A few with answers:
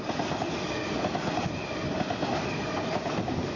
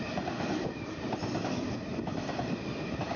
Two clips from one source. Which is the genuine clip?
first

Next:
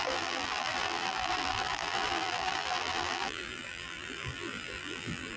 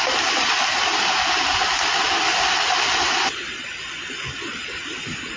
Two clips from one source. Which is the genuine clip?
second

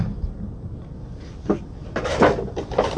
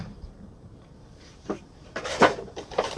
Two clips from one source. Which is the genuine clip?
first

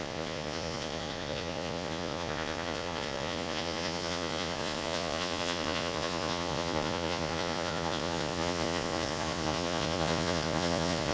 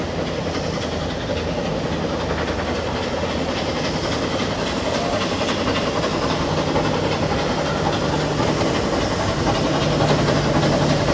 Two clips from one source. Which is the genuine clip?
second